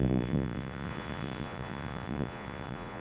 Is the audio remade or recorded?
remade